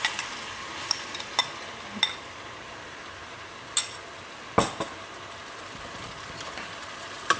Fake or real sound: real